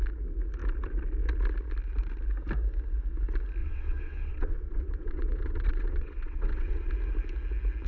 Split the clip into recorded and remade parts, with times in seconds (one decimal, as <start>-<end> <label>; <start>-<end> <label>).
0.0-3.6 recorded; 3.6-6.9 remade; 6.9-7.9 recorded